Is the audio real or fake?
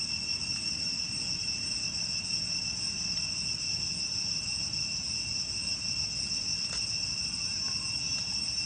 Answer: real